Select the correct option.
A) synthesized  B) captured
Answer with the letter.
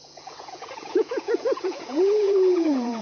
A